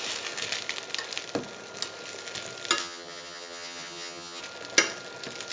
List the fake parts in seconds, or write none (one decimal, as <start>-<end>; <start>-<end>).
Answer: 2.8-4.4